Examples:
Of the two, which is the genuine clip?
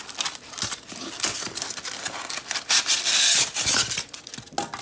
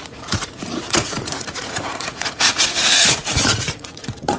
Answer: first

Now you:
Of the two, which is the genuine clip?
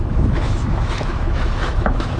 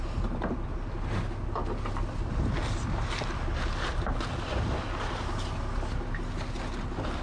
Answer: second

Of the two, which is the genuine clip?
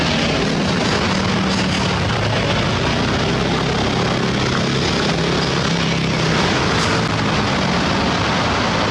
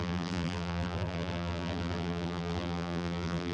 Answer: first